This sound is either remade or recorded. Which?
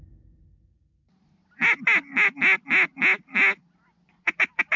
recorded